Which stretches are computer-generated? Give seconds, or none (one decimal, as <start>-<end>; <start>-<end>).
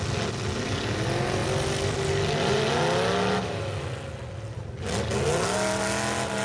none